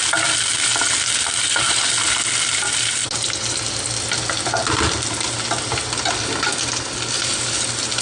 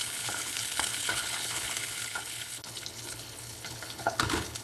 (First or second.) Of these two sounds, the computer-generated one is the second